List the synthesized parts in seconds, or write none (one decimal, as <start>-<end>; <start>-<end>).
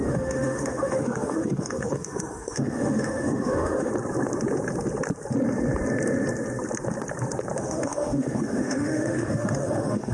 0.0-3.9; 7.6-10.1